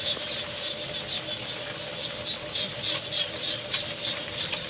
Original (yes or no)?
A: yes